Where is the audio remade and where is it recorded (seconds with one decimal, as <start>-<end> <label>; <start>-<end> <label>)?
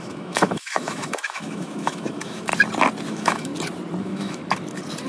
0.0-2.5 remade; 2.5-3.1 recorded; 3.1-3.5 remade; 3.5-4.0 recorded; 4.0-4.4 remade; 4.4-5.1 recorded